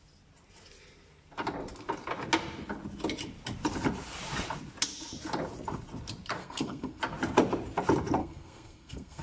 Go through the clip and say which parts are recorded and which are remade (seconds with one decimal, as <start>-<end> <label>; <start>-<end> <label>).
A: 0.0-6.4 recorded; 6.4-7.0 remade; 7.0-8.2 recorded; 8.2-9.2 remade